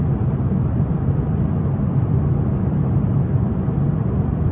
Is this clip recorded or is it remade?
recorded